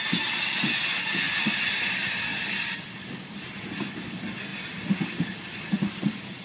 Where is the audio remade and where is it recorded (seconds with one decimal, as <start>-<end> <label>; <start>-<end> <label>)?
0.0-6.4 recorded